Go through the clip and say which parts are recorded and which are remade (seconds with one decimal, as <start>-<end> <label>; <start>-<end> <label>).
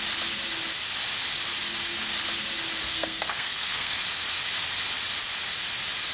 0.0-2.9 recorded; 2.9-4.0 remade; 4.0-6.1 recorded